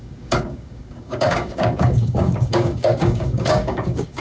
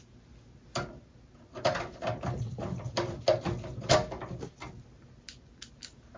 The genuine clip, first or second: second